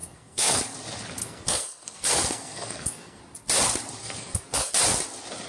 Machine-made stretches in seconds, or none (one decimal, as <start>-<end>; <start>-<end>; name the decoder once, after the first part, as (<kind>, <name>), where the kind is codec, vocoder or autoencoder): 0.0-0.6 (codec, SNAC); 1.2-3.2; 4.0-4.7